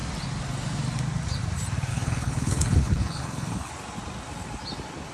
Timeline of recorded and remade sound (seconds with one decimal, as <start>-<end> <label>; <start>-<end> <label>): 0.0-1.9 recorded; 1.9-3.7 remade; 3.7-5.1 recorded